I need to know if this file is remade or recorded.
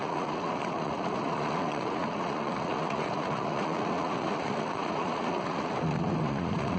remade